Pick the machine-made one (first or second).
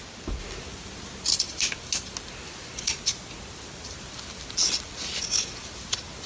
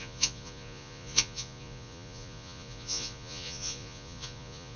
second